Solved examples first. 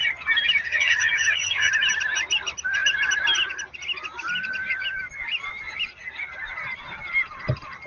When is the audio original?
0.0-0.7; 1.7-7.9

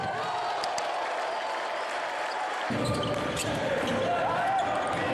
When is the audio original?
0.0-5.1

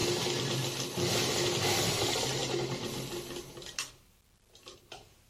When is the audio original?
0.0-5.3

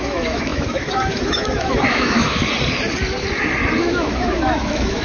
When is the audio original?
2.4-3.8

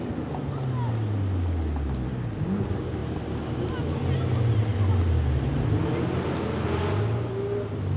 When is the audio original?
0.0-8.0

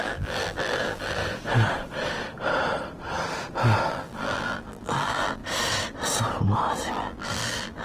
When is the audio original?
1.2-3.9; 5.4-6.9